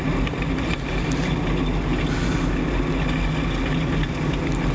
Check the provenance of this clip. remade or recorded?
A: recorded